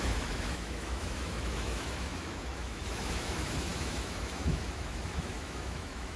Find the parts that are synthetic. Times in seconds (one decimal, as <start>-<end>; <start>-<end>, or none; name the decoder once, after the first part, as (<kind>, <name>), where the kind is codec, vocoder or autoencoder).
0.0-6.2 (autoencoder, DAC-VAE)